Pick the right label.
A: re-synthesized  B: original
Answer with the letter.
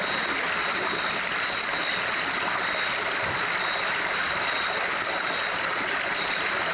B